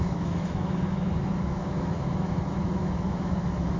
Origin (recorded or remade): remade